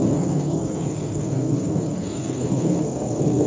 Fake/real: fake